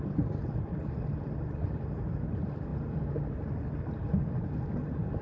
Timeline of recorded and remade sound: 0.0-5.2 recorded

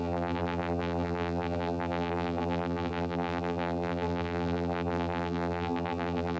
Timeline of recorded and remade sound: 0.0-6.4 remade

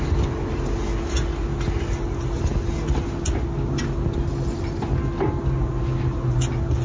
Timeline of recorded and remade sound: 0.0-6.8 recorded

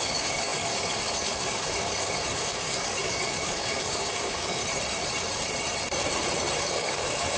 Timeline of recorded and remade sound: 0.0-4.6 remade; 4.6-6.6 recorded; 6.6-7.4 remade

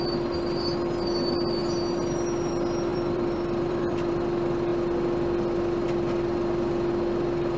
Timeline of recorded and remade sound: 0.0-2.9 recorded; 2.9-4.1 remade; 4.1-7.6 recorded

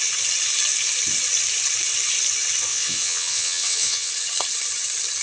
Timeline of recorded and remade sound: 0.0-2.7 recorded; 2.7-4.1 remade; 4.1-5.2 recorded